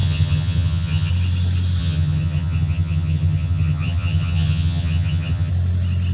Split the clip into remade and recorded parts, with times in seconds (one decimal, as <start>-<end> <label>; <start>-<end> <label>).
0.0-1.1 remade; 1.1-1.8 recorded; 1.8-5.5 remade; 5.5-6.1 recorded